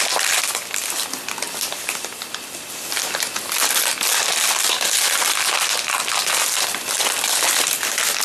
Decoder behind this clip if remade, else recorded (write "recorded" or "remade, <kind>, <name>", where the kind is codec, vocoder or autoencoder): recorded